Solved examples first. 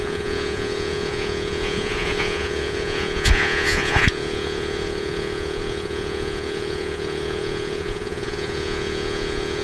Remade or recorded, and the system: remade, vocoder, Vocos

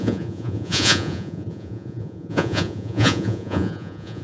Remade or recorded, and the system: remade, vocoder, Vocos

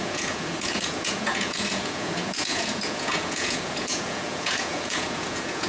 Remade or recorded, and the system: remade, vocoder, Vocos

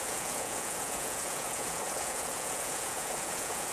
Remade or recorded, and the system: remade, vocoder, Vocos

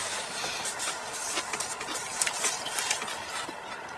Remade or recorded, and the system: recorded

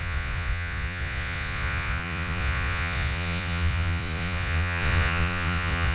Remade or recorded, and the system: remade, vocoder, Vocos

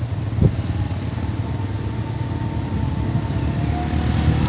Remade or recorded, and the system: recorded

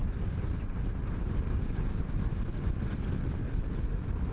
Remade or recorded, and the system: recorded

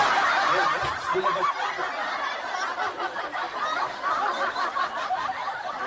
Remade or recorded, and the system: recorded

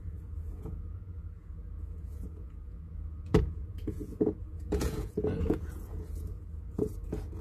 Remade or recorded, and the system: remade, vocoder, Vocos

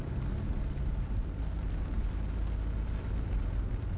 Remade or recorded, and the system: recorded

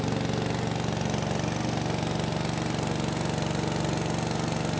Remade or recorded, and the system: recorded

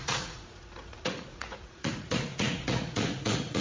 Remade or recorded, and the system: remade, vocoder, Vocos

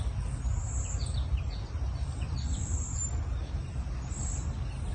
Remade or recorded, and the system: recorded